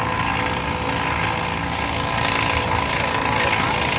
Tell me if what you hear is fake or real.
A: real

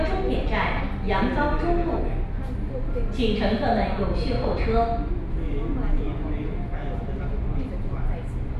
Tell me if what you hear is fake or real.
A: real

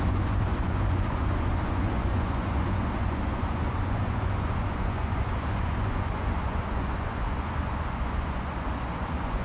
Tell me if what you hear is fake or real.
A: fake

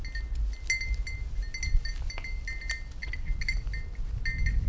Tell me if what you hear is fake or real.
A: real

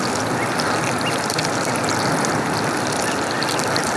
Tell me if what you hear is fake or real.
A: real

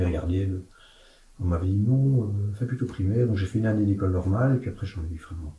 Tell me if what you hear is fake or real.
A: real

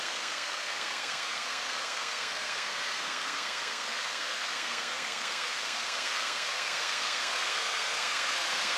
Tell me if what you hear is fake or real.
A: fake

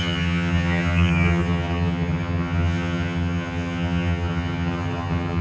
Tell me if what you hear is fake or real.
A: fake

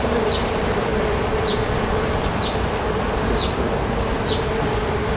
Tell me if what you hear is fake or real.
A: real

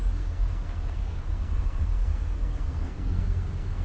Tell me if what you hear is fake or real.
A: fake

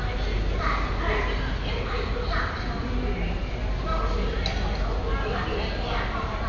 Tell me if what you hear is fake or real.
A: real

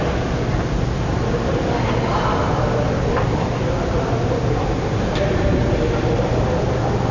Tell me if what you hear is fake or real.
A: real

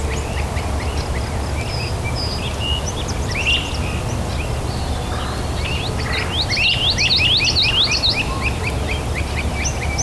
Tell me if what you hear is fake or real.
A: real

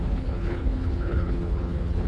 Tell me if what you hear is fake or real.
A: fake